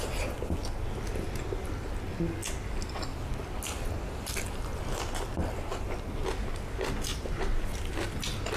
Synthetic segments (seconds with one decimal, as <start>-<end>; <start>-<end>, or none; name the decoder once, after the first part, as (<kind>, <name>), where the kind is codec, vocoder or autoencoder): 7.1-8.6 (vocoder, BigVGAN v2)